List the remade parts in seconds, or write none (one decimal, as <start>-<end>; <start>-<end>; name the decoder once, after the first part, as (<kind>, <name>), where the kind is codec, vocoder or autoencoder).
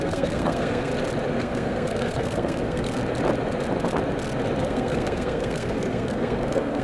0.0-0.9 (codec, SNAC); 1.4-3.0; 4.6-6.8